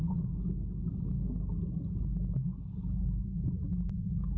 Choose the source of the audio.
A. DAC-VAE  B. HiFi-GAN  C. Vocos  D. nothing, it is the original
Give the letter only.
D